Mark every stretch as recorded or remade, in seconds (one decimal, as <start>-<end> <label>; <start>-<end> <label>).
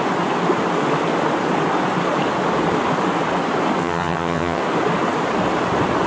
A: 0.0-3.8 recorded; 3.8-4.6 remade; 4.6-6.1 recorded